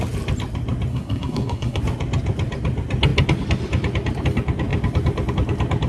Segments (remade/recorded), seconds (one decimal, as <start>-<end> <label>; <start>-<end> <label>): 0.0-0.9 recorded; 0.9-1.8 remade; 1.8-5.9 recorded